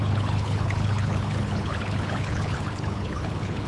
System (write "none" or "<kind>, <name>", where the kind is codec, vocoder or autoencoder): codec, HILCodec